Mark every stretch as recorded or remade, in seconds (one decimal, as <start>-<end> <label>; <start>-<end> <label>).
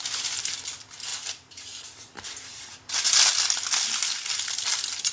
0.0-5.1 recorded